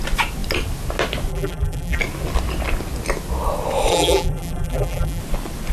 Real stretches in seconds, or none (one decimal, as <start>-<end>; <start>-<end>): 0.0-1.3; 2.0-3.9; 5.2-5.7